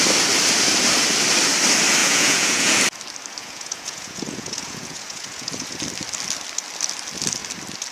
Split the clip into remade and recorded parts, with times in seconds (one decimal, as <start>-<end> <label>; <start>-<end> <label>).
0.0-2.0 recorded; 2.0-2.8 remade; 2.8-3.4 recorded; 3.4-5.8 remade; 5.8-7.9 recorded